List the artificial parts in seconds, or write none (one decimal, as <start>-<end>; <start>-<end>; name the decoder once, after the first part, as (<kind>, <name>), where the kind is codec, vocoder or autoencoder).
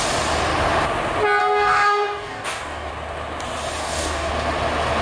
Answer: 1.4-2.9 (codec, DAC); 3.8-4.3